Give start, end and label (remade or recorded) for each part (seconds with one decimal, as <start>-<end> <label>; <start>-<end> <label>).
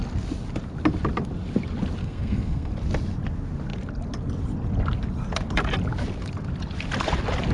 0.0-2.0 recorded; 2.0-2.7 remade; 2.7-7.5 recorded